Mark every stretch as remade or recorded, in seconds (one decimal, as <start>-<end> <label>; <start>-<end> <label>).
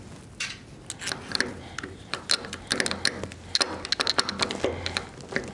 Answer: 0.0-5.5 recorded